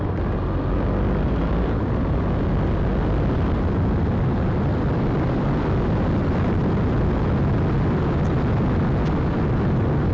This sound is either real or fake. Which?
real